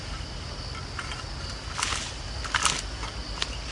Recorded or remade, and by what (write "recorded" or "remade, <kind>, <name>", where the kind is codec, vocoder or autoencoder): recorded